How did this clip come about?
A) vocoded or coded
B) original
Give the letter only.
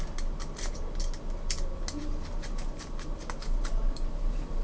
B